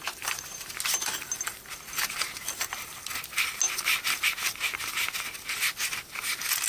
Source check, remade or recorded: recorded